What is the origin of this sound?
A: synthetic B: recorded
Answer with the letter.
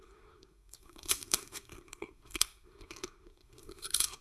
A